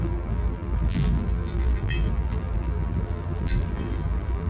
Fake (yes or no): yes